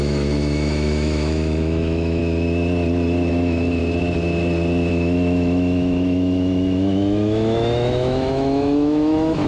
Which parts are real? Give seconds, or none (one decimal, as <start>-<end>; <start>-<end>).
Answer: 2.2-3.3; 3.8-4.9